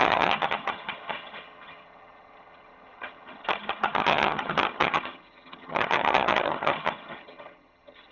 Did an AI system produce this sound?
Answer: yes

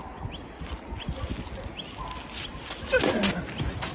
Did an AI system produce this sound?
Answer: no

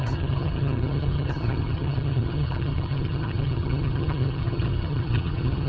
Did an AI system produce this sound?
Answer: yes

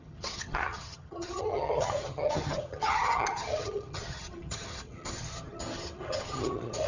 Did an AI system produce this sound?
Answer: yes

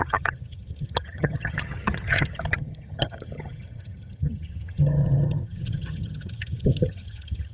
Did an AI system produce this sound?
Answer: yes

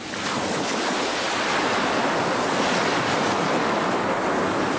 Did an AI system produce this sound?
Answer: no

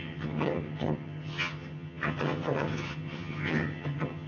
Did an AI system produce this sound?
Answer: yes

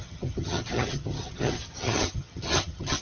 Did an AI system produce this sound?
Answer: yes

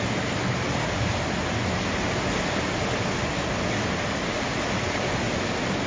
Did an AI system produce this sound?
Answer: no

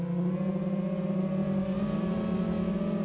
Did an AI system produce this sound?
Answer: no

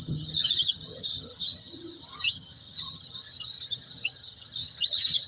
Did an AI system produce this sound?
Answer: yes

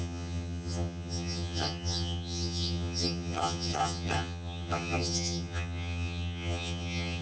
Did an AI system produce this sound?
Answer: yes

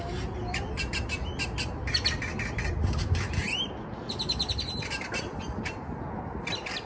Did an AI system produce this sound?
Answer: no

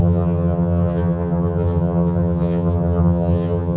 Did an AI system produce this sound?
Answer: yes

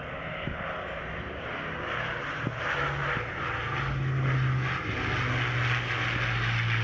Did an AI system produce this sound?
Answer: no